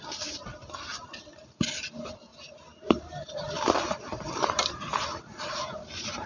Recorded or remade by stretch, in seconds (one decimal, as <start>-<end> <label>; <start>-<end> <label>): 0.0-2.3 recorded; 2.3-6.3 remade